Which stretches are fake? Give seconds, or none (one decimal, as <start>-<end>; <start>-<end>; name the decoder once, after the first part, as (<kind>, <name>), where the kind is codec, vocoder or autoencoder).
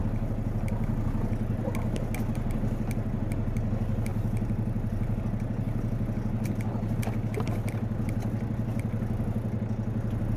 4.1-5.2 (vocoder, BigVGAN v2)